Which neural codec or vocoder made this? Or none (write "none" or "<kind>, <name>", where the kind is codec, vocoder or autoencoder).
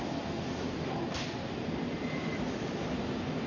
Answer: none